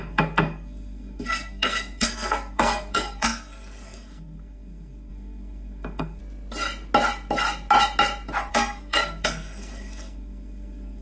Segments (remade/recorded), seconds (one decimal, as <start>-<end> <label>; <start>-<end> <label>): 0.0-6.2 remade; 6.2-8.5 recorded; 8.5-11.0 remade